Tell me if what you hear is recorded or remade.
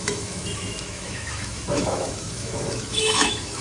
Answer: remade